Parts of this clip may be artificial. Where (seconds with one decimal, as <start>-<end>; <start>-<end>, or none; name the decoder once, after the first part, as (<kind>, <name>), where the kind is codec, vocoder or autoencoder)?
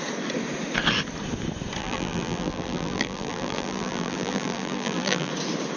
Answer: 1.8-5.3 (vocoder, BigVGAN v2)